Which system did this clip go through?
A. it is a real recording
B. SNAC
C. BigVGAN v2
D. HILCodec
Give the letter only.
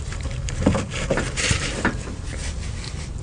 C